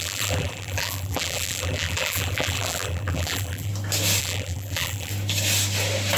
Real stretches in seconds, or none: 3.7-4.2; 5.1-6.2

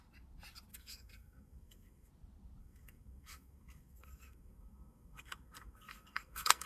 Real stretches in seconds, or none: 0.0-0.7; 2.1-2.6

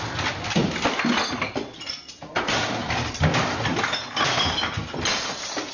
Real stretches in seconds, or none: 0.0-5.7